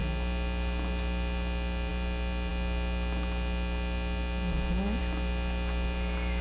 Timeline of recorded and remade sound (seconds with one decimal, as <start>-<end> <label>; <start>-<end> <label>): 0.0-6.4 recorded